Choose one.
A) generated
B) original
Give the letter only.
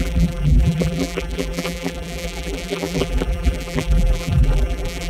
A